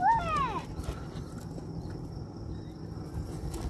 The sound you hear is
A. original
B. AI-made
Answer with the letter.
A